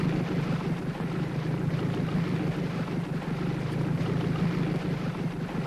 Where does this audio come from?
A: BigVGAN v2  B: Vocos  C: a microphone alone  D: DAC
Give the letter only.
C